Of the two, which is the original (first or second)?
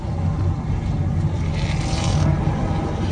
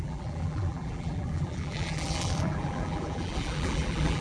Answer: first